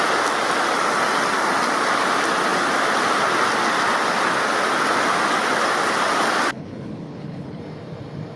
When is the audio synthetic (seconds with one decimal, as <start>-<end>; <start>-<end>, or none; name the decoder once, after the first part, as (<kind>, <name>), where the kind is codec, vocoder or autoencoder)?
6.5-7.6 (codec, HILCodec)